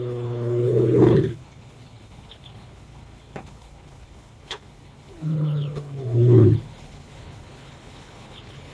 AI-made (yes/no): yes